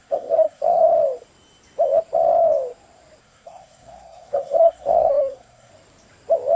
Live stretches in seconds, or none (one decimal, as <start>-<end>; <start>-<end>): 0.9-3.2; 5.7-6.6